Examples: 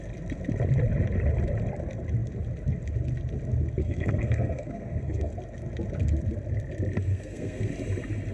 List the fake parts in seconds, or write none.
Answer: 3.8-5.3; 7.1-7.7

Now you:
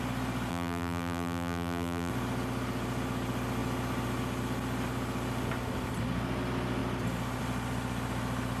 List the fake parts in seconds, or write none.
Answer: 0.5-2.1

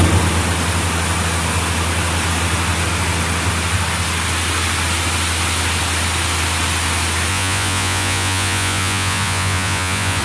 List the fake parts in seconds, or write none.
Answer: 7.3-10.2

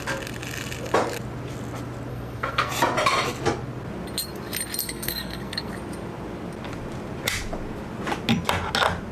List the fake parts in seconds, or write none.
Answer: 2.1-2.7; 4.8-5.7

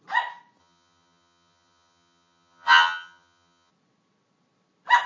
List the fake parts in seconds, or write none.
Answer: 0.6-3.7

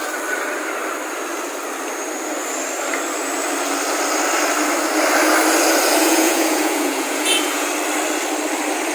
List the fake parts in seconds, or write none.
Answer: 6.0-7.7